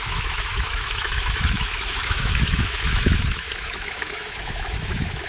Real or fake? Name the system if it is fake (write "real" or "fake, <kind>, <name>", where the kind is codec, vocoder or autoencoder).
fake, autoencoder, DAC-VAE